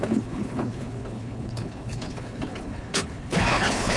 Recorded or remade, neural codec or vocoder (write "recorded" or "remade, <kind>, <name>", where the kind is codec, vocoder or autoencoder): remade, codec, HILCodec